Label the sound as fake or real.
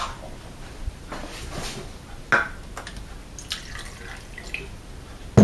real